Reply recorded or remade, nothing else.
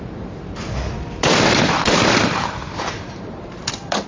remade